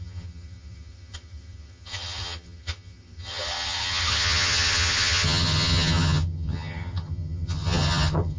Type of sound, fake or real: fake